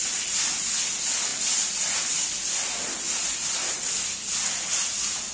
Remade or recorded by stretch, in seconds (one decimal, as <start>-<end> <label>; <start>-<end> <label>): 0.0-5.3 recorded